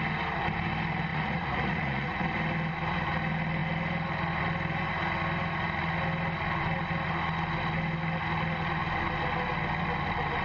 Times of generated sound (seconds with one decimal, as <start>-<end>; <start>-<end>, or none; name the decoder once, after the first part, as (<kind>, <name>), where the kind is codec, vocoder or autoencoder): 1.1-2.2 (vocoder, Vocos)